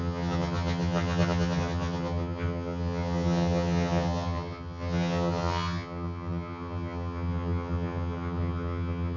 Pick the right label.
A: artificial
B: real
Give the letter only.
A